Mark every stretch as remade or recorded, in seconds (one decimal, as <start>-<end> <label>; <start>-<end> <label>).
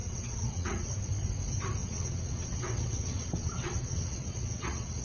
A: 0.0-0.9 remade; 0.9-1.8 recorded; 1.8-5.0 remade